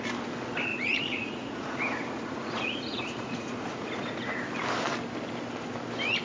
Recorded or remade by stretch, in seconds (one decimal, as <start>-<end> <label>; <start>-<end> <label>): 0.0-0.7 recorded; 0.7-4.4 remade; 4.4-6.2 recorded